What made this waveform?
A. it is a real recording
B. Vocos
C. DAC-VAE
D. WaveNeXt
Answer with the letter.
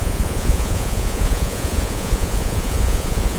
B